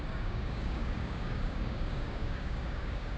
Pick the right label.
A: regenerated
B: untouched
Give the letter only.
A